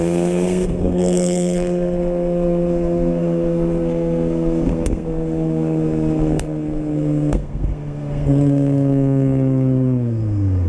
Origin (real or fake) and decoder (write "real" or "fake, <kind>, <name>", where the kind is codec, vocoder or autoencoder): fake, codec, SNAC